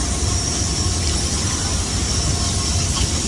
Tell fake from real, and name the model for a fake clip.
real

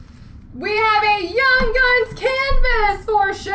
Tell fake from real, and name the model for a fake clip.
fake, vocoder, BigVGAN v2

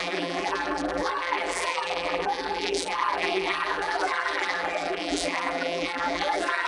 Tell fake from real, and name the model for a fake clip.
fake, vocoder, BigVGAN v2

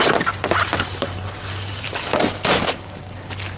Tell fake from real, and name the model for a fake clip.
real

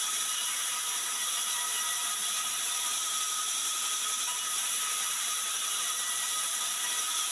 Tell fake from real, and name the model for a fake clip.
fake, vocoder, BigVGAN v2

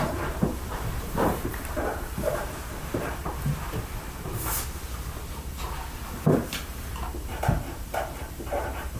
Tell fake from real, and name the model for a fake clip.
fake, vocoder, BigVGAN v2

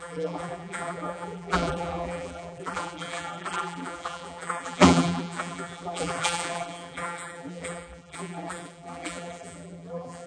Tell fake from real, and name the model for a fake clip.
fake, vocoder, BigVGAN v2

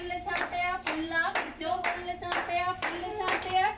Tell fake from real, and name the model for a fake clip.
fake, vocoder, BigVGAN v2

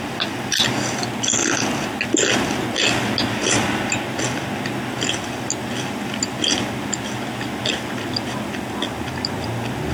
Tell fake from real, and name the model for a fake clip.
real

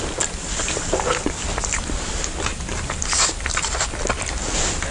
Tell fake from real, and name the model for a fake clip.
real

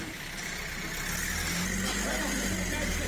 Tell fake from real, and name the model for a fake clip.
real